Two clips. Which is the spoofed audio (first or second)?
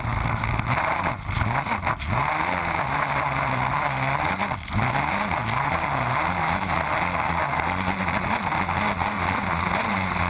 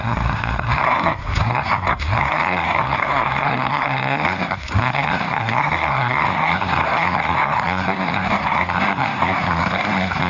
second